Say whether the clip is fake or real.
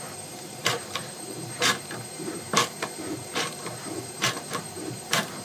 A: fake